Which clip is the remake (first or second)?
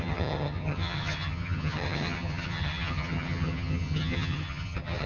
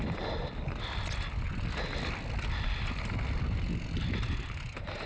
first